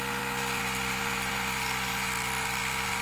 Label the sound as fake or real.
real